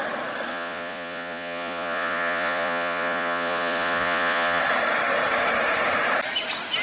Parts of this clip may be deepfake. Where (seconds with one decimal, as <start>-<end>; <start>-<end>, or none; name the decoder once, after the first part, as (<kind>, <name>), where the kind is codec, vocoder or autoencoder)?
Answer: 0.5-4.6 (vocoder, Vocos)